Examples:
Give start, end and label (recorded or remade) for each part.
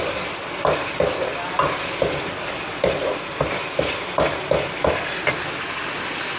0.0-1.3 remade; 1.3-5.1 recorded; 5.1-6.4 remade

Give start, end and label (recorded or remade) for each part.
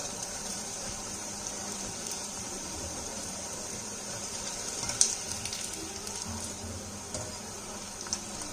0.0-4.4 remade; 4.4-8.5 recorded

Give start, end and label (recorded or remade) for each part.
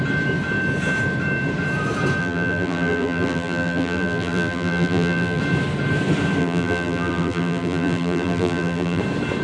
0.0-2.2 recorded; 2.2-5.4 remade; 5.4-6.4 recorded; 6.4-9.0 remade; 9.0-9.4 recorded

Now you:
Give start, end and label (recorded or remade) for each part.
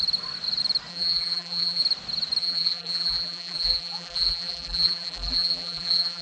0.0-0.9 recorded; 0.9-1.8 remade; 1.8-2.4 recorded; 2.4-6.2 remade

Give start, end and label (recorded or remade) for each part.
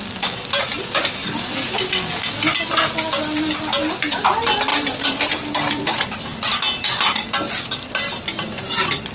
0.0-4.7 recorded; 4.7-5.8 remade; 5.8-9.1 recorded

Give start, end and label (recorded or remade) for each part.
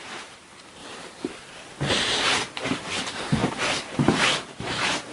0.0-0.8 remade; 0.8-1.9 recorded; 1.9-5.1 remade